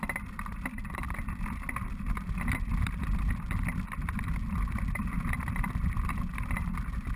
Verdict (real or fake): real